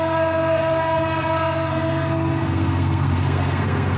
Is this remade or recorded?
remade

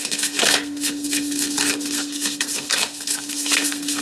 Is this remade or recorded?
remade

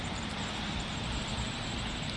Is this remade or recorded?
recorded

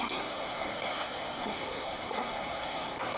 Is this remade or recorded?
remade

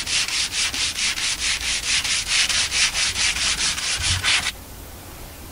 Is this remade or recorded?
remade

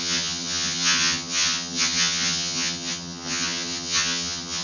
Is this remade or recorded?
remade